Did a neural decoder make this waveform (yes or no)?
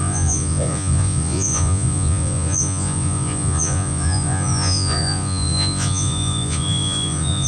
yes